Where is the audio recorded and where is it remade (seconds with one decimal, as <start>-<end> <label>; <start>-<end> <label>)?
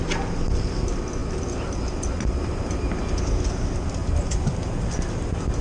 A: 0.0-5.6 recorded